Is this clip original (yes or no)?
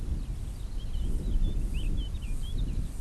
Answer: yes